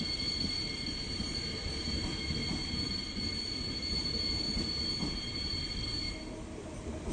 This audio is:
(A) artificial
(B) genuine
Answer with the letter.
B